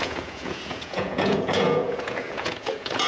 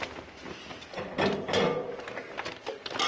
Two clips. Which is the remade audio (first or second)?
first